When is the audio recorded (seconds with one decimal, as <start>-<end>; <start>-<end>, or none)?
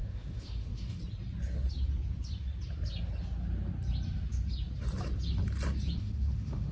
1.0-6.0